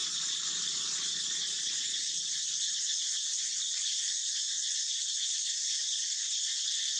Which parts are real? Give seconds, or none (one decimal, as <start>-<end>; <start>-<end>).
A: 0.0-4.2; 6.2-7.0